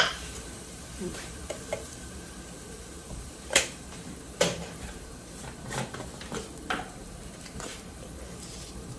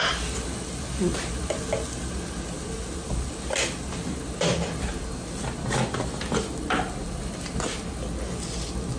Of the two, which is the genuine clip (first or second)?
second